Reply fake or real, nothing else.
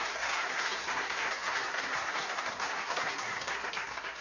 fake